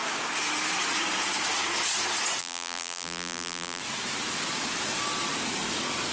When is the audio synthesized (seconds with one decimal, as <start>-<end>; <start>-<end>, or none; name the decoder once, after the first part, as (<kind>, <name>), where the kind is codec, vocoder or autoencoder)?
2.4-3.8 (vocoder, BigVGAN v2)